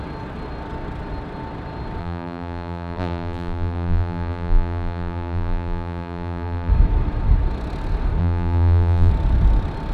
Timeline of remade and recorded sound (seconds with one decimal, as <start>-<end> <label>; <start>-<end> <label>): 0.0-2.0 recorded; 2.0-6.7 remade; 6.7-8.2 recorded; 8.2-9.1 remade; 9.1-9.9 recorded